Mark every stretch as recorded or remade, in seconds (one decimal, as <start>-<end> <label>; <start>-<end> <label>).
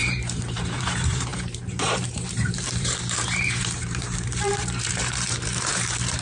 0.0-6.2 remade